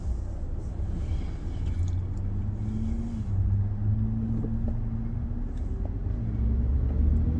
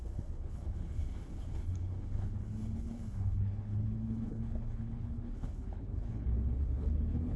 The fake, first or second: second